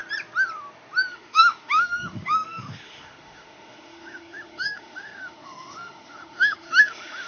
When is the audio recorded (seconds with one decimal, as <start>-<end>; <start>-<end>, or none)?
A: 0.0-1.1